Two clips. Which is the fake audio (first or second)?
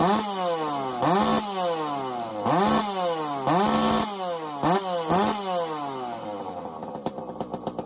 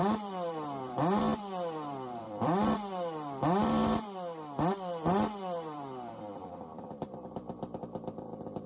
second